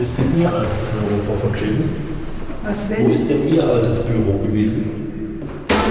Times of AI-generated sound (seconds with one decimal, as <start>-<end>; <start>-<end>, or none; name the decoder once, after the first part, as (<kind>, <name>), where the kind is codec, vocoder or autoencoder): 0.0-0.8 (codec, SNAC); 4.3-5.1